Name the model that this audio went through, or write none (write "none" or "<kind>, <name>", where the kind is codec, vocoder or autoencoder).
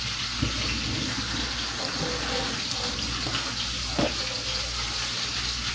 none